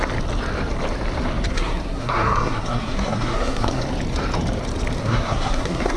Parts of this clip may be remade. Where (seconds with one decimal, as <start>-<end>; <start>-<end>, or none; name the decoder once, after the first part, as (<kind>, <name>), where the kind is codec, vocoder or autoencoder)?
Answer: 1.5-3.8 (codec, SNAC); 5.0-6.0